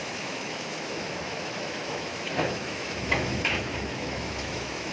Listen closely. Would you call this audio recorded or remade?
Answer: remade